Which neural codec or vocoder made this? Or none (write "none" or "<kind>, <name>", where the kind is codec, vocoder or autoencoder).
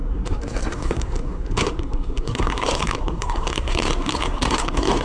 codec, SNAC